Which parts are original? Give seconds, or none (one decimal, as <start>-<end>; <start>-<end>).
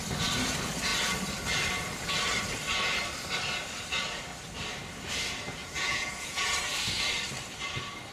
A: 0.0-5.6; 6.5-8.1